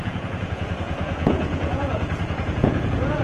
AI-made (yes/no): yes